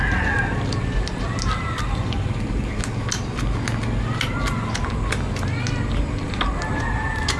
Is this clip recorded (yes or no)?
yes